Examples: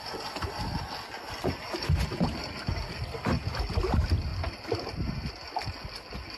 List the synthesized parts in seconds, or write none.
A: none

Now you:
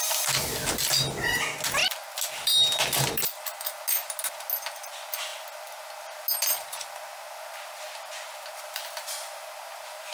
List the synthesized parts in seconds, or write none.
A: none

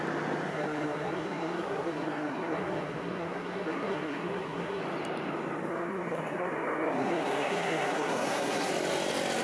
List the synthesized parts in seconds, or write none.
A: 0.5-4.8; 5.7-8.7

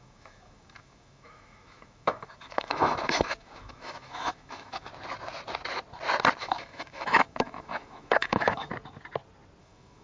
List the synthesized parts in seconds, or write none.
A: 0.0-4.9; 6.4-8.7; 9.6-10.0

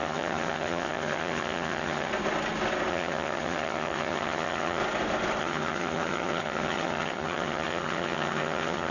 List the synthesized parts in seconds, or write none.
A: 0.0-2.1; 2.9-4.8; 5.4-8.9

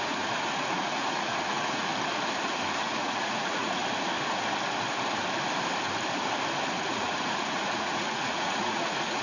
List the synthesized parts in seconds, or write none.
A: 0.0-1.9; 2.8-3.8; 6.7-9.2

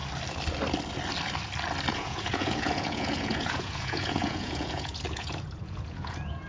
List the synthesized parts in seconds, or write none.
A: 1.9-6.5